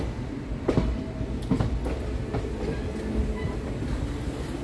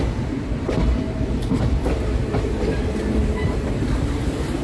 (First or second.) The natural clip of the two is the first